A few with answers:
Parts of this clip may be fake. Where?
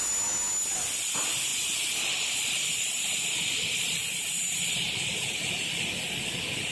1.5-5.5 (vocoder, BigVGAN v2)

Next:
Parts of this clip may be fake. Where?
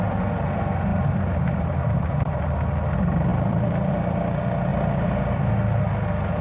0.9-2.4 (vocoder, BigVGAN v2); 3.3-3.9; 4.7-5.5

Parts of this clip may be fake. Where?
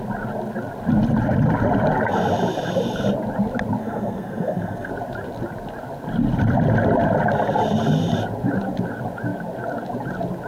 3.8-4.9 (codec, SNAC)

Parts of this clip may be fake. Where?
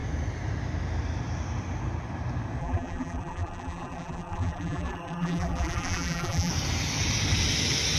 2.6-6.5 (vocoder, BigVGAN v2)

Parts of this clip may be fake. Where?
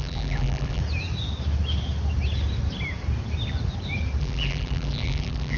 0.0-0.8 (vocoder, BigVGAN v2); 4.2-5.6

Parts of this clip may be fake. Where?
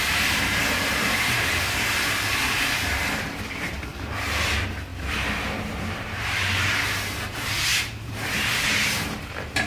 0.0-4.9 (vocoder, BigVGAN v2); 5.6-9.7